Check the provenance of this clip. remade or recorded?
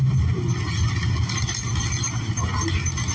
recorded